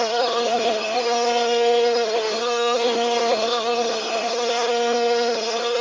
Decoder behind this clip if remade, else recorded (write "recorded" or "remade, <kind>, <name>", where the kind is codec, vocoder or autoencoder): remade, codec, SNAC